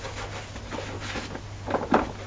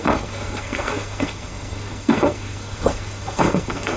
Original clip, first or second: first